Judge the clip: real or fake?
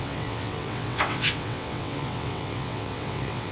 fake